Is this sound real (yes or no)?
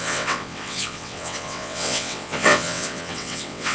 no